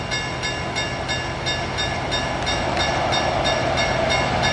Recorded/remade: recorded